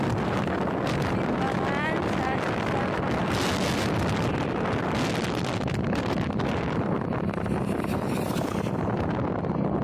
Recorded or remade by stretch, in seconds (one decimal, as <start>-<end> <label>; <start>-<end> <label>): 0.0-9.8 recorded

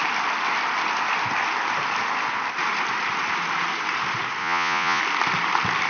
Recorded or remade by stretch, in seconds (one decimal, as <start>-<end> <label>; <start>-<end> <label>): 0.0-4.4 recorded; 4.4-5.0 remade; 5.0-5.9 recorded

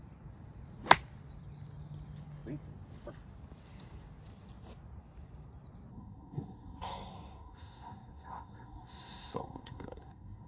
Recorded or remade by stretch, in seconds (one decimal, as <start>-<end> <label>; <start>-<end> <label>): 0.0-5.9 recorded; 5.9-10.5 remade